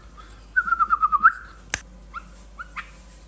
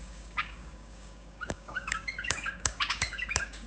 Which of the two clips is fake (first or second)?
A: second